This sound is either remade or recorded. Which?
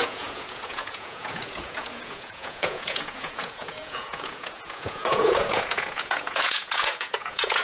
remade